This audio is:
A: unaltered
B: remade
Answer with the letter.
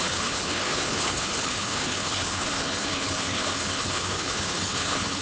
B